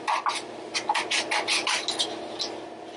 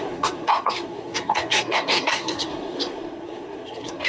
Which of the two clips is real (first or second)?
first